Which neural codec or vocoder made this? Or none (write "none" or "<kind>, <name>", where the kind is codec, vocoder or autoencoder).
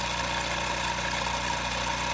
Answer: none